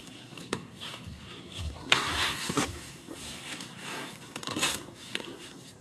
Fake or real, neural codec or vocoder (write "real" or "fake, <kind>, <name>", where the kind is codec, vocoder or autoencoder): fake, codec, SNAC